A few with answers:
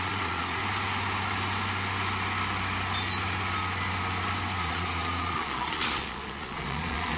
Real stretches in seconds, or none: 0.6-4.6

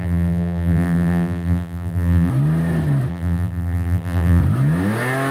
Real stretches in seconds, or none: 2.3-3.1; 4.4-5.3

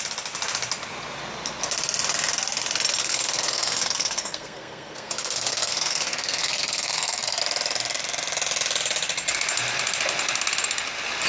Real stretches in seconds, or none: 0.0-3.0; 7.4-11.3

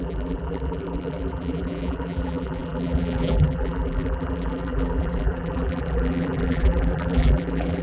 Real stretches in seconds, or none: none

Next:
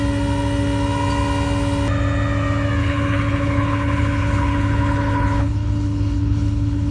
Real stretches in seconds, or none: 0.0-2.8

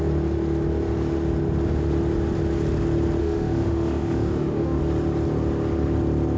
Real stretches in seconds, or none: 0.0-3.2; 4.8-6.4

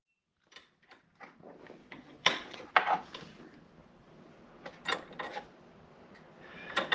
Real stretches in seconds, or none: 0.0-1.8; 2.7-6.9